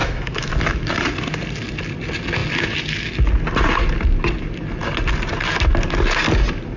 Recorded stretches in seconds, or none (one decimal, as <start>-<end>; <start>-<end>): 0.5-6.8